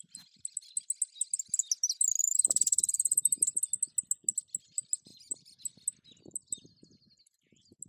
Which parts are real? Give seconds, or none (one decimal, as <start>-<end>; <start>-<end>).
0.0-2.2; 3.6-5.1; 5.6-7.9